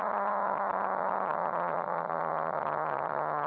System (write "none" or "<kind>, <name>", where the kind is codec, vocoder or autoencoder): vocoder, HiFi-GAN